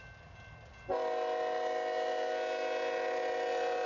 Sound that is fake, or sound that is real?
real